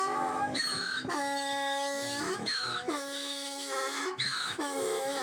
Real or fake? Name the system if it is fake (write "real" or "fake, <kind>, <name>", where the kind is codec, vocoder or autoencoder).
fake, autoencoder, DAC-VAE